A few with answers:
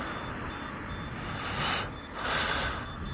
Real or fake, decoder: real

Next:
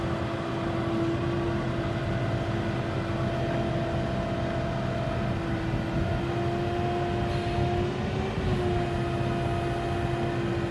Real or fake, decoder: real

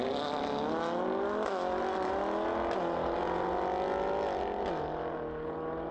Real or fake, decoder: real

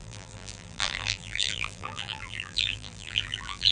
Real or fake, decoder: fake, vocoder, BigVGAN v2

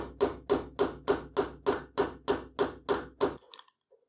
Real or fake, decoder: real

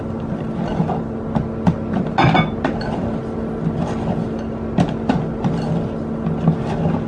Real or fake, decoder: real